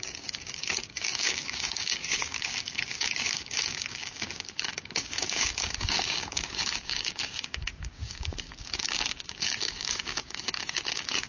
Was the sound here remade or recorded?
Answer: remade